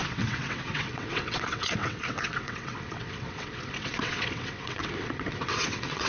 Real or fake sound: fake